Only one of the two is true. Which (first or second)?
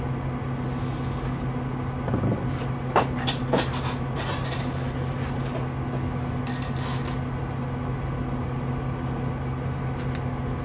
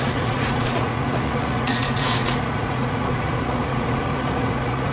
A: first